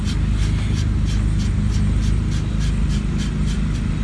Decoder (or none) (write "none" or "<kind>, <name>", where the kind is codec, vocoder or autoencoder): none